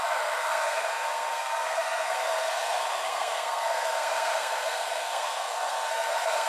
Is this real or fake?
fake